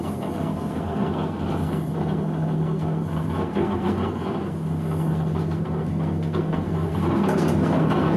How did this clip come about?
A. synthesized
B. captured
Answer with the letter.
A